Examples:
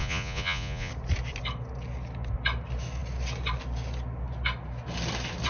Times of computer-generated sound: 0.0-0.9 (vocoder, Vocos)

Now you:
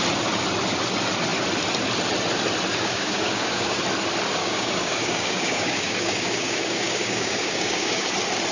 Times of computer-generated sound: 2.7-3.8 (codec, DAC); 4.4-8.1